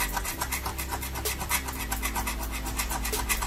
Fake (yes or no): no